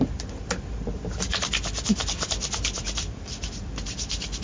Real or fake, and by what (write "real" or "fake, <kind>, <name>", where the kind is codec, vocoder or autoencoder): real